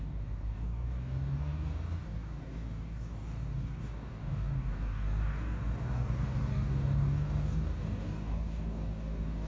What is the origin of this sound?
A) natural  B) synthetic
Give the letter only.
B